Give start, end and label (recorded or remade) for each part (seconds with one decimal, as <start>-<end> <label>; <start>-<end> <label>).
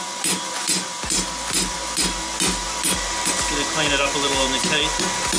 0.0-5.4 recorded